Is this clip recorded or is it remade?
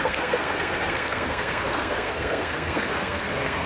remade